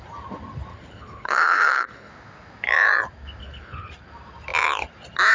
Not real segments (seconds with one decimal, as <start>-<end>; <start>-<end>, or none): 0.7-2.1; 3.4-3.9